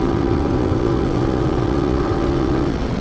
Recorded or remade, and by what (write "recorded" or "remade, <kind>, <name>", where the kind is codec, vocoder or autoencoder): remade, vocoder, WaveNeXt